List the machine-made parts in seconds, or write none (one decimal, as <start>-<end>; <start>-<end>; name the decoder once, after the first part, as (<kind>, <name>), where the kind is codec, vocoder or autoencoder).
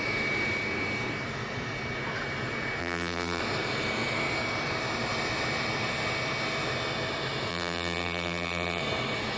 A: 2.8-3.4 (vocoder, BigVGAN v2); 7.5-8.8